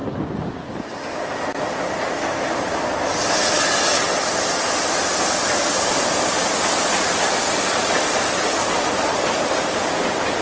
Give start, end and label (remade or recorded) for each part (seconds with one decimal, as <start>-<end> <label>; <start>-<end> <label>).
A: 0.0-10.4 recorded